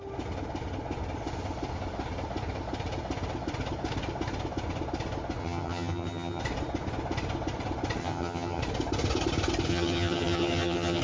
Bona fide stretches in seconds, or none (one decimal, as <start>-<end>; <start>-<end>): 0.0-5.4; 6.4-8.0; 8.6-9.7